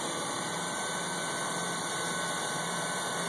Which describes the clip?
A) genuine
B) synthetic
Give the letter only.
B